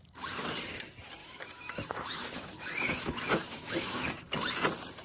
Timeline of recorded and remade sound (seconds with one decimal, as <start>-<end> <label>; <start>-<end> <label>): 0.0-1.2 recorded; 1.2-4.2 remade; 4.2-5.0 recorded